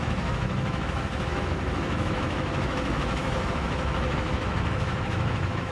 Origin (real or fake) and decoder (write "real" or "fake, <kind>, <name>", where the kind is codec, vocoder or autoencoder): fake, autoencoder, DAC-VAE